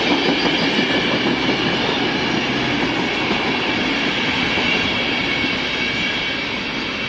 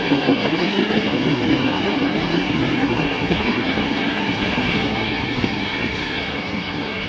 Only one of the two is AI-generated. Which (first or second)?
second